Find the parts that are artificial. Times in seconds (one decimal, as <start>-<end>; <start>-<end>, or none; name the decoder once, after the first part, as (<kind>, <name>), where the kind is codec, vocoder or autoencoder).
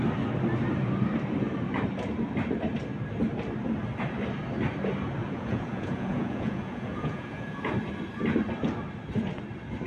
5.2-7.7 (vocoder, Vocos)